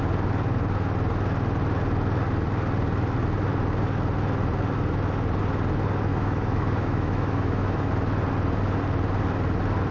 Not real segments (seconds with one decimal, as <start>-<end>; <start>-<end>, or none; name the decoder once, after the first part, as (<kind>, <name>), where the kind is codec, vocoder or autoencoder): 6.1-7.9 (autoencoder, DAC-VAE)